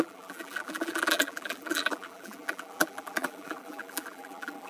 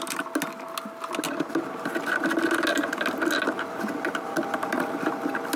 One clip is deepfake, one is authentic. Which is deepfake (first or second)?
first